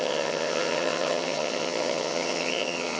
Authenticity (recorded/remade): remade